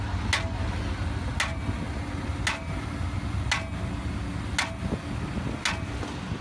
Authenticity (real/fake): real